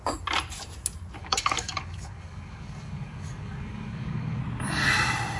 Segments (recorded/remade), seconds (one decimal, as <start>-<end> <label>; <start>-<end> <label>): 0.0-1.2 recorded; 1.2-4.4 remade; 4.4-5.4 recorded